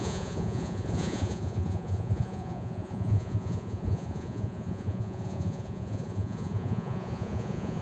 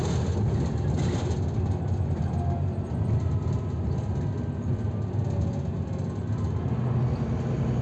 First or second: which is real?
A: second